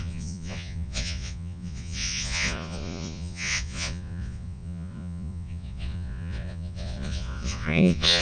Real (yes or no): no